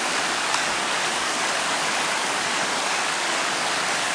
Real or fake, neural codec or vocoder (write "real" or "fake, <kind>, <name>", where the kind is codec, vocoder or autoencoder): fake, codec, DAC